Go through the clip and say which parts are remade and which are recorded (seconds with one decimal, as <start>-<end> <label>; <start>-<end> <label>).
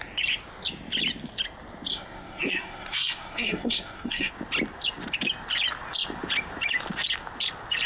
0.0-1.9 recorded; 1.9-4.3 remade; 4.3-7.9 recorded